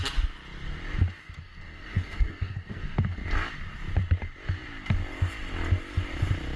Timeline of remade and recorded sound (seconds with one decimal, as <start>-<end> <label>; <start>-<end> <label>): 0.0-1.4 recorded; 1.4-3.2 remade; 3.2-6.6 recorded